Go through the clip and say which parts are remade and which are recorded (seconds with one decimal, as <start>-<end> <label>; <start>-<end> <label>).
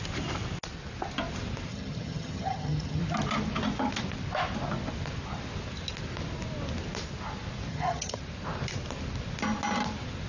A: 0.0-1.7 recorded; 1.7-3.0 remade; 3.0-7.7 recorded; 7.7-8.2 remade; 8.2-10.3 recorded